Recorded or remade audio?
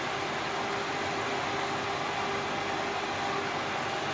recorded